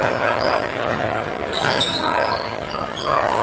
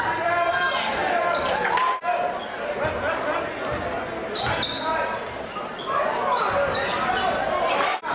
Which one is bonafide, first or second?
second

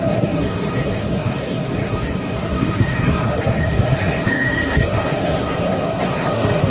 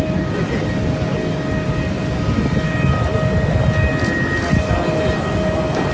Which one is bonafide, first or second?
second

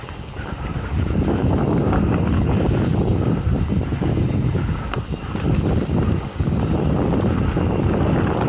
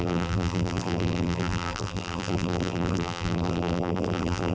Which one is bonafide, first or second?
first